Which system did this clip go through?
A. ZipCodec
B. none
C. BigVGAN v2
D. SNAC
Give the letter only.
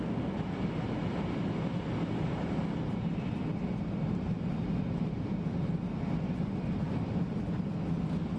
B